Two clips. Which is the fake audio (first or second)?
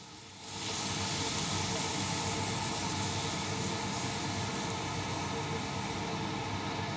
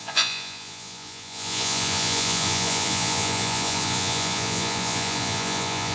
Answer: second